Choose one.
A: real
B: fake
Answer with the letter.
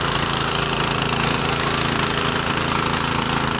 A